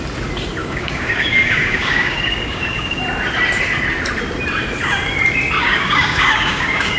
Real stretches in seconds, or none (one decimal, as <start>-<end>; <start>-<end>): 0.0-0.6; 3.0-5.6

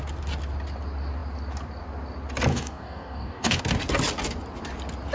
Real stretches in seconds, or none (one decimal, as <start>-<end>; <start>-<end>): 0.0-2.5; 3.6-5.1

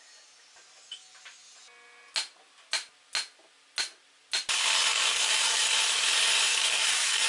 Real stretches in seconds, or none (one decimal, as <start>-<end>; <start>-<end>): 0.0-4.9; 5.6-6.5